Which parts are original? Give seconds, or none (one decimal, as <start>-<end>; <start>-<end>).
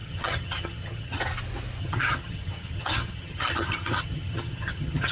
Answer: 1.2-1.8